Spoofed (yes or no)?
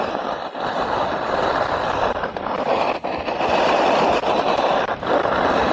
yes